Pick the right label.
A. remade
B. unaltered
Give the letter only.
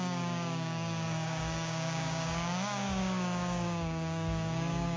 A